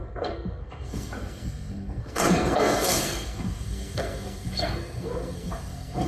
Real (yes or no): no